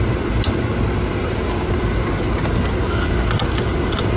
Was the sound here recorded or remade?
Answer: recorded